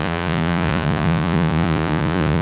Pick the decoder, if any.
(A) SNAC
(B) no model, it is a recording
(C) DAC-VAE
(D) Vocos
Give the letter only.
D